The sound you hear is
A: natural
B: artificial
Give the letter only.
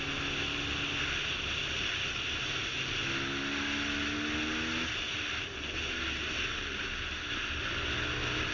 A